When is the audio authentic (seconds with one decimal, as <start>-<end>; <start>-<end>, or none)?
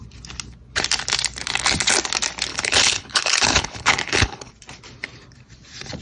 0.0-2.5; 4.5-6.0